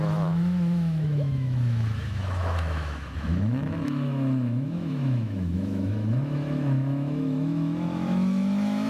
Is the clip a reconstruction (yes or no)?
yes